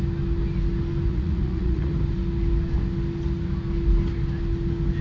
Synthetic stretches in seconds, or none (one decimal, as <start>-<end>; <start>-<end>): 1.1-1.9